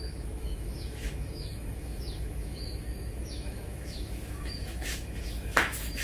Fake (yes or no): yes